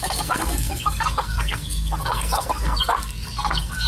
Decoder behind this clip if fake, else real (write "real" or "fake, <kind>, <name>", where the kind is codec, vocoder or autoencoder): fake, codec, SNAC